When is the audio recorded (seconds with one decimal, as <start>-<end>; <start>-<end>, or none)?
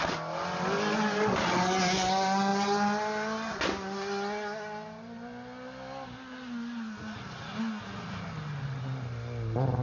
0.0-9.8